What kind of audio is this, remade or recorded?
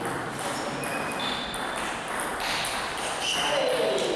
recorded